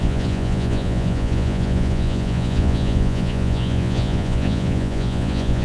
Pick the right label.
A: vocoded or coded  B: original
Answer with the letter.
A